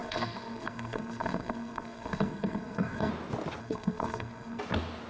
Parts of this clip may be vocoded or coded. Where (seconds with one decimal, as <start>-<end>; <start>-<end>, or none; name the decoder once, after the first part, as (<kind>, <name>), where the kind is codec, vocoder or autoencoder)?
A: 0.0-3.1 (codec, SNAC); 3.6-4.6